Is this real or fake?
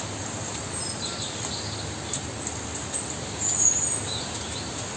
real